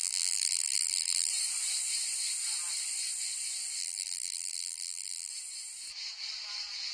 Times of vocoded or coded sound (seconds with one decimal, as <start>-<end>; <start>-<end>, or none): 0.0-1.3; 3.8-5.3